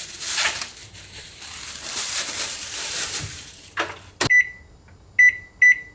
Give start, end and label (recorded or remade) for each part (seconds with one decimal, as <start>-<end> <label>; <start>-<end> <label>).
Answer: 0.0-0.8 recorded; 0.8-3.8 remade; 3.8-5.9 recorded